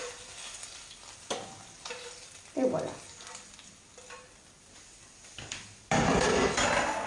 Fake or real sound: real